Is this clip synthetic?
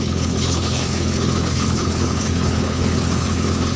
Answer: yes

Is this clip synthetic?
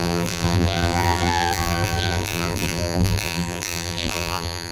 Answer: yes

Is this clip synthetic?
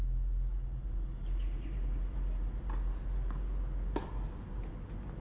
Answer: no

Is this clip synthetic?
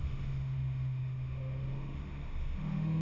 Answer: yes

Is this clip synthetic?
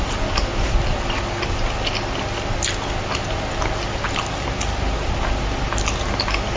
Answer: no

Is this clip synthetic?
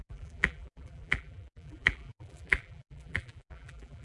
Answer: yes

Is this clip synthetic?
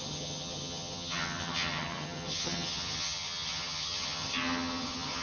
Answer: yes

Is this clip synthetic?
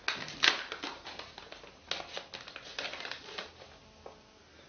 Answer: no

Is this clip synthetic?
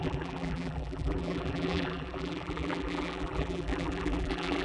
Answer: yes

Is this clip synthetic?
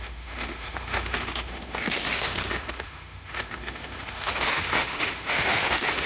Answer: yes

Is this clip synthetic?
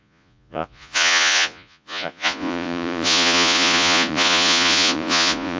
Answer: yes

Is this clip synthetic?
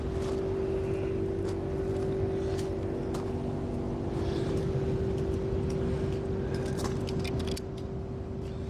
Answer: no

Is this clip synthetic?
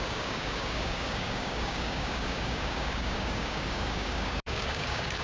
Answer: yes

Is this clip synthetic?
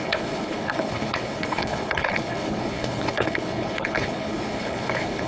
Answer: yes